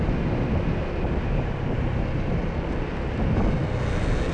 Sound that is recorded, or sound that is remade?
recorded